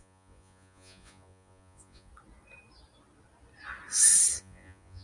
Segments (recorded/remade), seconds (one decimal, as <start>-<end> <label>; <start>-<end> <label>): 0.0-2.1 remade; 2.1-4.4 recorded; 4.4-5.0 remade